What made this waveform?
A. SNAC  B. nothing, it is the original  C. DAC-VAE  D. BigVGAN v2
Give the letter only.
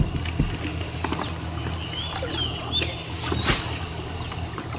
B